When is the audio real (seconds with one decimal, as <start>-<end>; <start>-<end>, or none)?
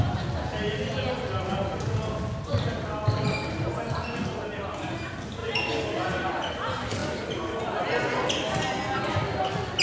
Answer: 0.0-9.8